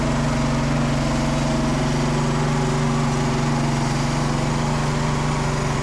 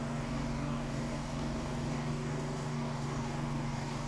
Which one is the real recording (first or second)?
first